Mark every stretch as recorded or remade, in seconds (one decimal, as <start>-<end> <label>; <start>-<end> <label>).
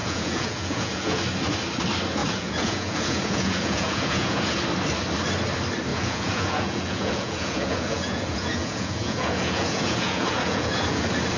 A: 0.0-1.2 remade; 1.2-2.2 recorded; 2.2-4.6 remade; 4.6-5.9 recorded; 5.9-11.0 remade; 11.0-11.4 recorded